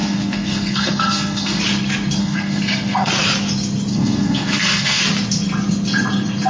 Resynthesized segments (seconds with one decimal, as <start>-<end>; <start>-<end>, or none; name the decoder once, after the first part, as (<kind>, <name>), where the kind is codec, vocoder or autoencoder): 0.0-1.6 (codec, SNAC); 2.2-3.1; 3.9-5.0